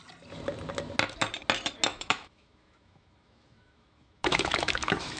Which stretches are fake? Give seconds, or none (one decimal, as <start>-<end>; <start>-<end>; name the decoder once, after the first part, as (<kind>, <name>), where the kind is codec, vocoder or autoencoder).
1.9-5.2 (autoencoder, DAC-VAE)